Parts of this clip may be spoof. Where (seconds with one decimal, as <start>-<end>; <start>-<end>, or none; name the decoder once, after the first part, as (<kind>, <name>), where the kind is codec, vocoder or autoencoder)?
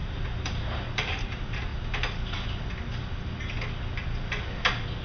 0.0-1.7 (vocoder, BigVGAN v2)